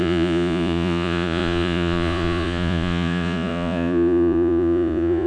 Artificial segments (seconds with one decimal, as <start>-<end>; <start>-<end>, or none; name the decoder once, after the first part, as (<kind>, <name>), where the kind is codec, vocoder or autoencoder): 0.0-5.3 (vocoder, Vocos)